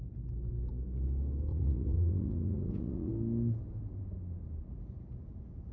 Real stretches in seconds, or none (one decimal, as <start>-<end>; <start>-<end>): 0.0-1.5; 3.1-5.7